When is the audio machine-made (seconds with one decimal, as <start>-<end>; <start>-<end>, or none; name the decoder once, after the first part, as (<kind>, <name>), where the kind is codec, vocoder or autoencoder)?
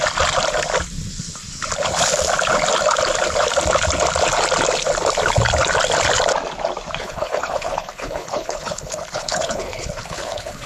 7.0-10.7 (codec, HILCodec)